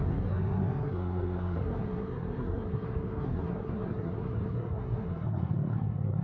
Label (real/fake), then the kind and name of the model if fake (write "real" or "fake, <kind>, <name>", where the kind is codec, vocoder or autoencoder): fake, codec, SNAC